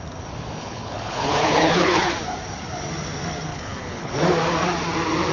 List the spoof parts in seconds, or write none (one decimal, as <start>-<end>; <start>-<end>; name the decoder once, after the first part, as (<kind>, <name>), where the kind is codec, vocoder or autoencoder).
0.6-2.1 (codec, HILCodec); 3.5-4.1